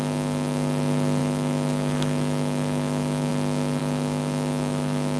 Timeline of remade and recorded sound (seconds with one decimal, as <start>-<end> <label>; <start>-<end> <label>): 0.0-1.2 recorded; 1.2-3.3 remade; 3.3-3.8 recorded; 3.8-5.2 remade